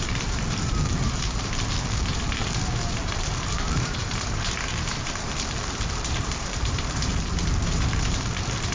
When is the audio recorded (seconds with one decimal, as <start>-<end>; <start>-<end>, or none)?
4.0-4.7